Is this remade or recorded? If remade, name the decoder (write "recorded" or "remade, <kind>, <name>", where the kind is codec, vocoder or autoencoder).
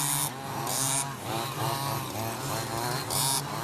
recorded